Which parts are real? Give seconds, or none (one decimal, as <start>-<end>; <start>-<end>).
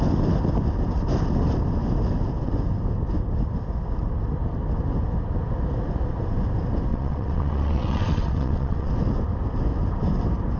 0.0-6.9; 8.9-10.6